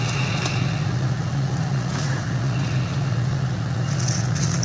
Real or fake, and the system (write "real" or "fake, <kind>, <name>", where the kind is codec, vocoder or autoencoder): fake, vocoder, Vocos